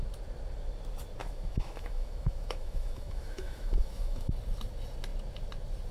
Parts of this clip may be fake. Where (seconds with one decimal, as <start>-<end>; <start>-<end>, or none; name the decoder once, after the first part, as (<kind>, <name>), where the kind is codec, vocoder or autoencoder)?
1.2-4.3 (autoencoder, DAC-VAE)